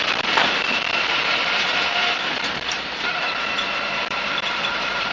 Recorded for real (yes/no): no